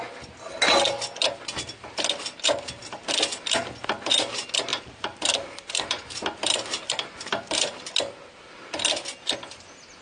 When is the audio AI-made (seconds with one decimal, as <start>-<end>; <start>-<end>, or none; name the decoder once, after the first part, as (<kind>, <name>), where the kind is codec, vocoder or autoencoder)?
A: 4.7-7.9 (vocoder, BigVGAN v2)